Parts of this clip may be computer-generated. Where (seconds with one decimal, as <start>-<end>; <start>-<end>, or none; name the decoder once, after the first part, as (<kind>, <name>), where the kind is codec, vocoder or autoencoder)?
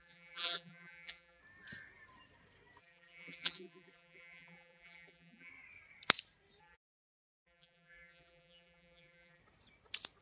0.0-1.4 (vocoder, BigVGAN v2); 2.8-5.5; 6.6-9.4